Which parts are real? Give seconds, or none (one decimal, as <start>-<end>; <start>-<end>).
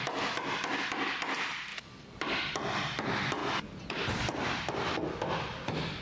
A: 0.0-6.0